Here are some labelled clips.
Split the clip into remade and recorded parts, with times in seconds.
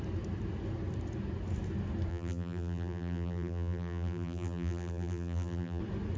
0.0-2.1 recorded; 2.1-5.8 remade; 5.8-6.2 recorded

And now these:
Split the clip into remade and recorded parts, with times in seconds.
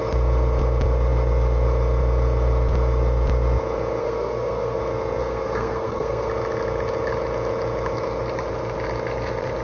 0.0-4.0 recorded; 4.0-4.8 remade; 4.8-5.2 recorded; 5.2-6.3 remade; 6.3-9.6 recorded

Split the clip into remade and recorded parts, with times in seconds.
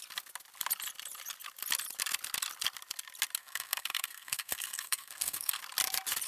0.0-3.4 recorded; 3.4-5.6 remade; 5.6-6.3 recorded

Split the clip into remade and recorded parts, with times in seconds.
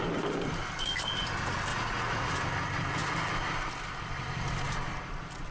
0.0-1.7 recorded; 1.7-2.3 remade; 2.3-5.5 recorded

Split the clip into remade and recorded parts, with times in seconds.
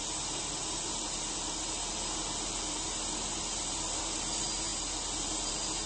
0.0-5.9 recorded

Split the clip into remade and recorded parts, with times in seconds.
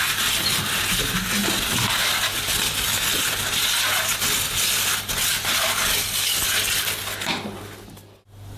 0.0-8.6 recorded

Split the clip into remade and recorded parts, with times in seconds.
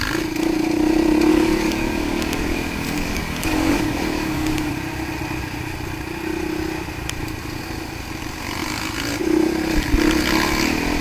0.0-1.3 recorded; 1.3-4.7 remade; 4.7-11.0 recorded